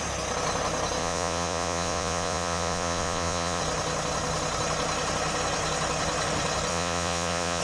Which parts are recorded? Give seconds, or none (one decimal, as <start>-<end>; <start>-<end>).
0.0-1.0; 3.6-6.7